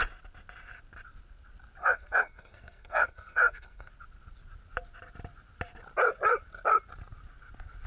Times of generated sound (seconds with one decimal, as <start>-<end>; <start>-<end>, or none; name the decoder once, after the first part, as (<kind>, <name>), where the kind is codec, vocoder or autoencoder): 1.8-3.9 (codec, SNAC)